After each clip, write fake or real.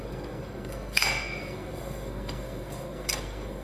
fake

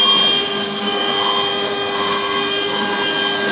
real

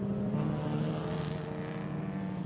real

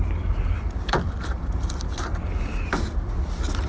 real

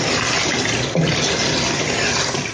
real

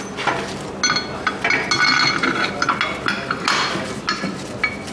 real